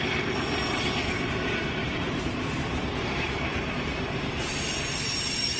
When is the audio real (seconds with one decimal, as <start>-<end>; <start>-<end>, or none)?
0.0-1.8; 4.5-5.6